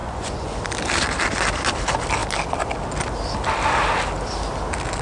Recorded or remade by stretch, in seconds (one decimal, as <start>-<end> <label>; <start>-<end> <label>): 0.0-0.6 remade; 0.6-5.0 recorded